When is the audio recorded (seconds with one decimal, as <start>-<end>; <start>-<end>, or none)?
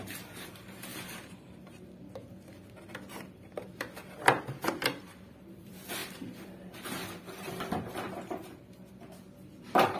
2.2-3.1